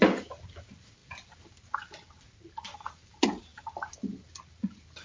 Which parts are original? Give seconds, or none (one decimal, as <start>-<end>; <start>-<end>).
0.0-5.0